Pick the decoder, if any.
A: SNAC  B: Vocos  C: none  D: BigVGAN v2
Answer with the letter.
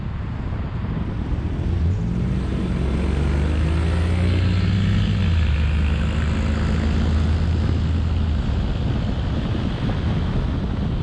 C